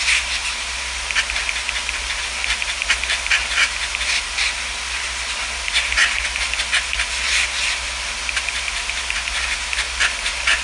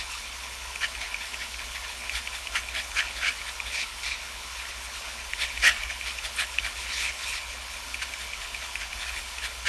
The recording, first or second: first